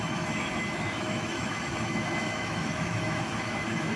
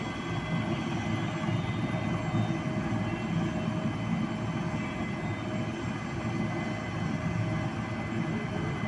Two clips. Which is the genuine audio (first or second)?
second